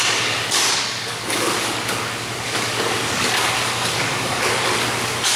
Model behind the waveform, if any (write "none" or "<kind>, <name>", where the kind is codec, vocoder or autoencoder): codec, DAC